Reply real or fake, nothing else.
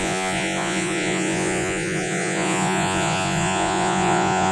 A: fake